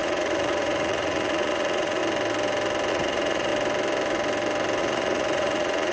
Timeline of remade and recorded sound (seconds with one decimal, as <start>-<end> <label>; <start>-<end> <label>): 0.0-2.0 remade; 2.0-2.9 recorded; 2.9-3.5 remade; 3.5-4.8 recorded; 4.8-5.9 remade

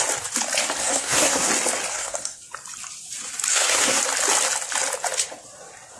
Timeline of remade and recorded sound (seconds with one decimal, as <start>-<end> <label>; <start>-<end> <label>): 0.0-0.8 recorded; 0.8-1.5 remade; 1.5-1.9 recorded; 1.9-2.4 remade; 2.4-3.5 recorded; 3.5-4.0 remade; 4.0-6.0 recorded